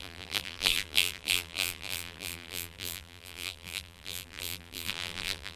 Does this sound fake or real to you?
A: fake